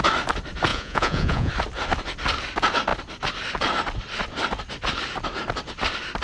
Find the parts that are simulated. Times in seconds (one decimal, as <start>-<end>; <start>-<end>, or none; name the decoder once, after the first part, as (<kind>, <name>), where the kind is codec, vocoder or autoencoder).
0.7-1.5 (vocoder, Vocos)